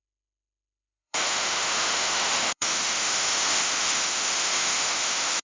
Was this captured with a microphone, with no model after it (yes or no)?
no